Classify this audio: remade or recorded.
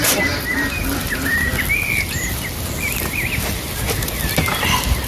recorded